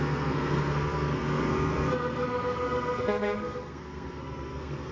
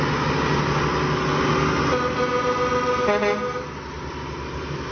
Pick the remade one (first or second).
first